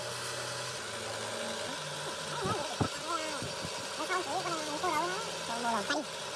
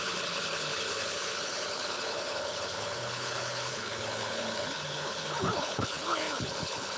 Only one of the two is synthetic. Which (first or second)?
second